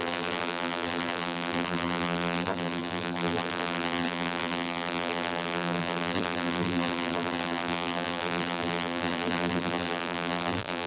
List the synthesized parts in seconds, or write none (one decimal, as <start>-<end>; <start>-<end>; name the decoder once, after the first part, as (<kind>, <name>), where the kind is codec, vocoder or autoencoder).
0.0-10.9 (vocoder, BigVGAN v2)